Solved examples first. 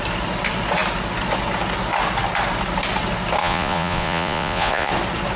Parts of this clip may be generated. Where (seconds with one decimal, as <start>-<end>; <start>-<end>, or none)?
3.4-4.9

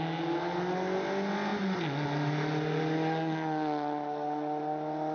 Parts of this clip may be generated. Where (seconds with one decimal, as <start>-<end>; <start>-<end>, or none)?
none

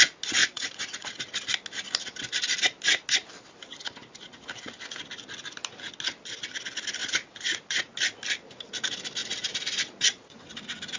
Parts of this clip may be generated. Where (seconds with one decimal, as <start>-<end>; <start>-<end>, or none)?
0.4-1.2; 7.0-7.9; 9.2-10.4

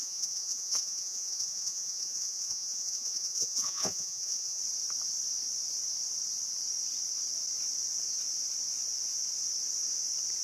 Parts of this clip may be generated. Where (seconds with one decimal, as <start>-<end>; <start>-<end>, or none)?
0.0-4.6

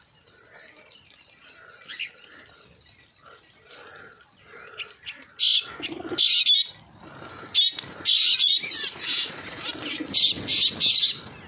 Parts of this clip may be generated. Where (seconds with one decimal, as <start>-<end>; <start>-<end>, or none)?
8.2-9.6

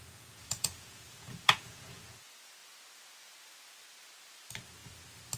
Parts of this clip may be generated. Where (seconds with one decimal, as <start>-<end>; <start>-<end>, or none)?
0.0-2.0